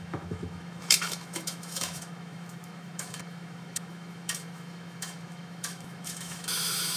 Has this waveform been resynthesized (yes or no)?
yes